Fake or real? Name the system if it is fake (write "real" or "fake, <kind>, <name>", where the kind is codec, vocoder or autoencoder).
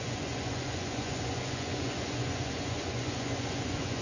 fake, vocoder, Vocos